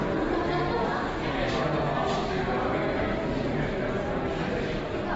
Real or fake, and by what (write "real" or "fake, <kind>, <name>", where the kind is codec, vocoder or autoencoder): real